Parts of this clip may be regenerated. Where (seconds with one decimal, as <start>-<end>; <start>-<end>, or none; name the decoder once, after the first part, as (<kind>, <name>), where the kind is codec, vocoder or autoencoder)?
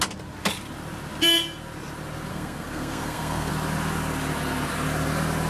2.3-3.5 (codec, SNAC)